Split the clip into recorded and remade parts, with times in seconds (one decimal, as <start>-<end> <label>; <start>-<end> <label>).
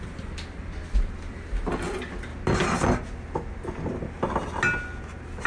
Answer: 0.0-5.5 recorded